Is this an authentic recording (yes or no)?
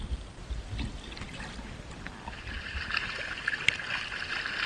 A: yes